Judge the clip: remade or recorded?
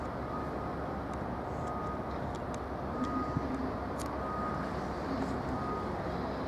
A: recorded